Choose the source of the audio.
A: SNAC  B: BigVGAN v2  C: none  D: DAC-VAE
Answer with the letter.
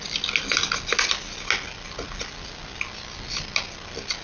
C